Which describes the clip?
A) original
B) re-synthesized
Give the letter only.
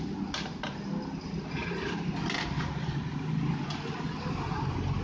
A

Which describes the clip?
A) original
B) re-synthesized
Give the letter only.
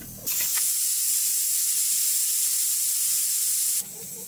A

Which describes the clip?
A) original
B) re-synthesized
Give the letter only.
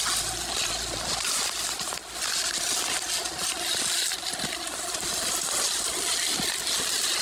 A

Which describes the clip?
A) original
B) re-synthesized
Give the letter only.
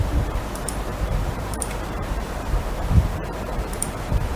B